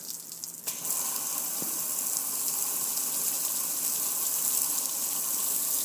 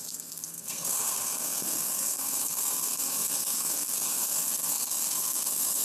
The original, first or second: first